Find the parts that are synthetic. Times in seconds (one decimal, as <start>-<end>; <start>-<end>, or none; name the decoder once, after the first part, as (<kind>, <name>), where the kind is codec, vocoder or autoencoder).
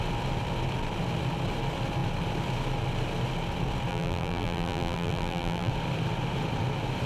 3.9-5.7 (vocoder, BigVGAN v2)